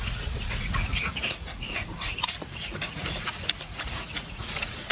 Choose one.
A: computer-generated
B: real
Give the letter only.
A